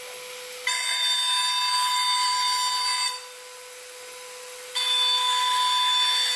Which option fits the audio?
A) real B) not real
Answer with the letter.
A